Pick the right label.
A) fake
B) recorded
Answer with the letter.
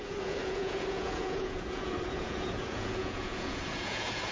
A